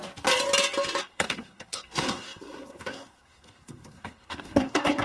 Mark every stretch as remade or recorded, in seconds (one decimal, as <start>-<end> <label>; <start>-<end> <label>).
0.0-1.0 recorded; 1.0-5.0 remade